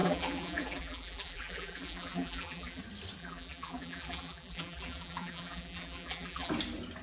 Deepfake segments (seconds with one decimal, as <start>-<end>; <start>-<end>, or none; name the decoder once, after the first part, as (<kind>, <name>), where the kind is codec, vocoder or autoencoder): 0.0-2.8 (vocoder, BigVGAN v2); 3.2-6.5